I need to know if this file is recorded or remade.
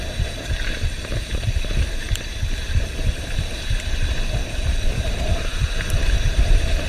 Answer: remade